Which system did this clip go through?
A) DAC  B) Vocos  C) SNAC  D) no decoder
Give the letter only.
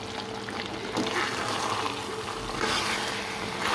D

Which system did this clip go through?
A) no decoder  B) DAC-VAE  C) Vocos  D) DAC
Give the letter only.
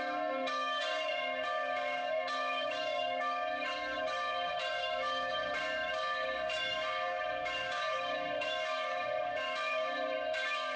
D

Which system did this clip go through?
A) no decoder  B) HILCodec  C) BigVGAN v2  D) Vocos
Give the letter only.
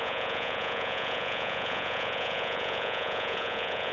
D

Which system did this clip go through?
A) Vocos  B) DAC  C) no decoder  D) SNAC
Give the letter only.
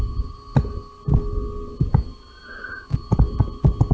C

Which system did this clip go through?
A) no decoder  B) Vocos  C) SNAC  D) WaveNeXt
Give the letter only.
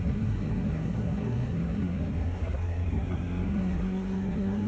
C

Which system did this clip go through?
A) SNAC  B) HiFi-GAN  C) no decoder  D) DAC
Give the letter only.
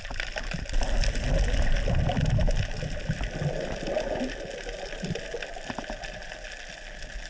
C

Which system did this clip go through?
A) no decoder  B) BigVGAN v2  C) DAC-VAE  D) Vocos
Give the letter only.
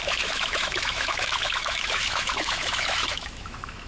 C